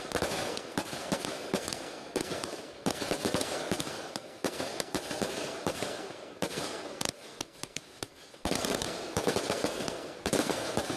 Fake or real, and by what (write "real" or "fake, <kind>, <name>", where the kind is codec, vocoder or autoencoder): fake, codec, SNAC